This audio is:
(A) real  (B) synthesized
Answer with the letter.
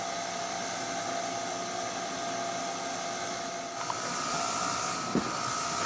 A